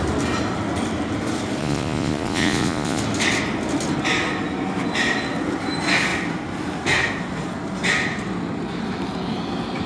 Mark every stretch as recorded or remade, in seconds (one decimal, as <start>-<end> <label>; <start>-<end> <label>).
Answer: 0.0-1.6 recorded; 1.6-3.0 remade; 3.0-9.9 recorded